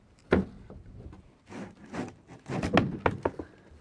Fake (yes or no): no